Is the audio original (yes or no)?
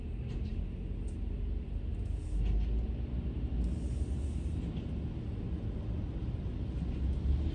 yes